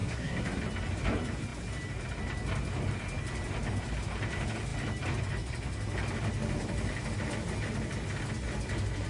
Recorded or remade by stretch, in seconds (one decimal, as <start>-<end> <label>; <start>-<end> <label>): 0.0-0.6 remade; 0.6-9.1 recorded